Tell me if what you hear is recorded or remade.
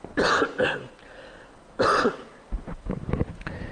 recorded